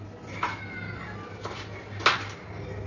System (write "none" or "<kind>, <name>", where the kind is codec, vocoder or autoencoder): none